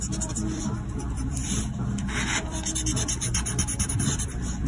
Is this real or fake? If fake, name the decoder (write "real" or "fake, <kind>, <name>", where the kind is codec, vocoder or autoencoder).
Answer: fake, vocoder, BigVGAN v2